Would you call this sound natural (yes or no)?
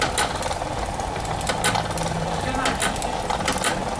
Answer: yes